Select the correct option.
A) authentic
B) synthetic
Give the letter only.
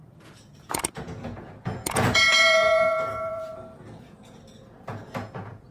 B